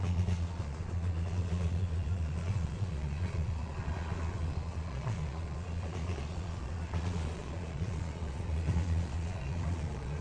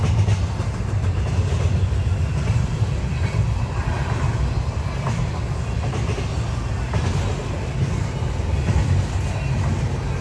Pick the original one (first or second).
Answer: second